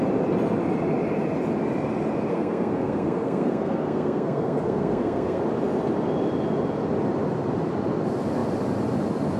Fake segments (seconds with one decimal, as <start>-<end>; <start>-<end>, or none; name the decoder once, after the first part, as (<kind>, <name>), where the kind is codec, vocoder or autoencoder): 2.3-5.4 (codec, SNAC)

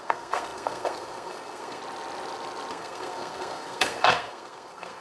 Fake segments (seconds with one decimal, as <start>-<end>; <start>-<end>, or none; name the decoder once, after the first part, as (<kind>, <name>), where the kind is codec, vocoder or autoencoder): 0.0-1.8 (codec, SNAC); 2.7-5.0

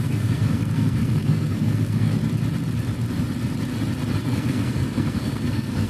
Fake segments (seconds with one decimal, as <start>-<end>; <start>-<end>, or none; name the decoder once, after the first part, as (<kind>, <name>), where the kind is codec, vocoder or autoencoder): 0.0-2.2 (codec, SNAC); 4.2-5.9

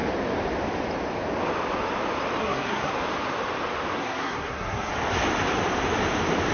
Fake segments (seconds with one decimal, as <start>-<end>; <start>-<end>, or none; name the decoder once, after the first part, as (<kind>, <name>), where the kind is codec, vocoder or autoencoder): 2.4-2.9 (codec, SNAC); 4.0-4.9

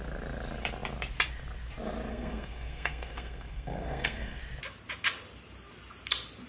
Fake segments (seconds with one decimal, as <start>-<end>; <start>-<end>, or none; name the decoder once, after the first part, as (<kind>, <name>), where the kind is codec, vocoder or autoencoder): 2.1-4.4 (codec, SNAC)

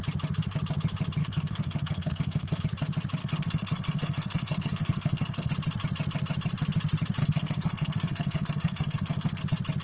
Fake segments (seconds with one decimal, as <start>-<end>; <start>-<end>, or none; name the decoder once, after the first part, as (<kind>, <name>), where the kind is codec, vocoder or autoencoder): 1.2-2.6 (codec, SNAC); 3.2-5.5; 7.2-9.4

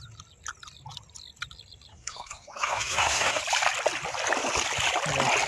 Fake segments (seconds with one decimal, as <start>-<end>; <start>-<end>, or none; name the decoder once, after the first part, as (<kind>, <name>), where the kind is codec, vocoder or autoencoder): 1.9-3.4 (codec, SNAC)

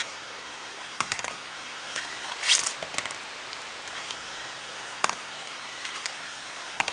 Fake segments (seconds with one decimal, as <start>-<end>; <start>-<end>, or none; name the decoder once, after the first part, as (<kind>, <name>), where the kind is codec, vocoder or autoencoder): 0.0-2.3 (codec, SNAC); 3.9-6.9